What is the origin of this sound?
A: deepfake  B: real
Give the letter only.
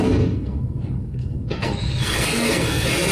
A